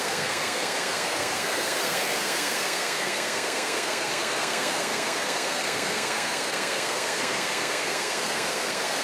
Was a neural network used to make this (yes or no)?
yes